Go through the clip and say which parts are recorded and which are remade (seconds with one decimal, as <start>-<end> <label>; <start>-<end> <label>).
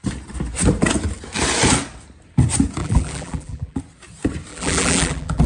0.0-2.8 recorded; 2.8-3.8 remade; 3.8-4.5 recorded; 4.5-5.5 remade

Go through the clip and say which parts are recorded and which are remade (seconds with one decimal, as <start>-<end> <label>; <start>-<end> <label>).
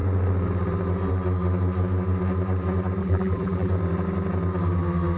0.0-3.0 recorded; 3.0-3.7 remade; 3.7-5.2 recorded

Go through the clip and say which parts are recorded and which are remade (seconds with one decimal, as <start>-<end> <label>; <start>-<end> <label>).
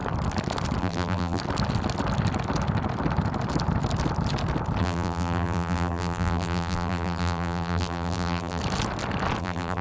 0.0-0.8 recorded; 0.8-1.4 remade; 1.4-4.8 recorded; 4.8-8.6 remade; 8.6-9.4 recorded; 9.4-9.8 remade